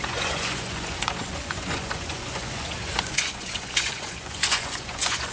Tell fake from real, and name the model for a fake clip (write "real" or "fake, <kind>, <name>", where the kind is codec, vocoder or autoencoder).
fake, vocoder, Vocos